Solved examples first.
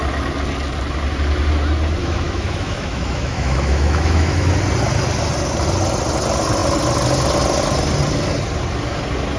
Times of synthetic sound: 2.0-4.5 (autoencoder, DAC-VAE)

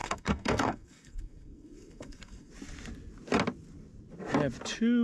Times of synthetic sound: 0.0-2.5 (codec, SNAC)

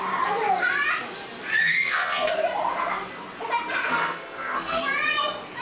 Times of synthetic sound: 1.6-2.3 (codec, SNAC); 3.9-4.8

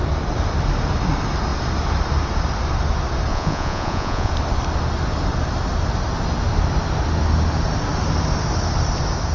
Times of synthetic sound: 3.3-4.3 (vocoder, Vocos)